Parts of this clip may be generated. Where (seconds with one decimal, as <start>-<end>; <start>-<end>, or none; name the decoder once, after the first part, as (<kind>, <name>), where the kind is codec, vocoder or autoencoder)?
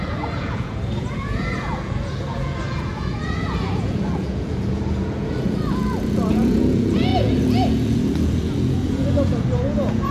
0.0-10.1 (vocoder, Vocos)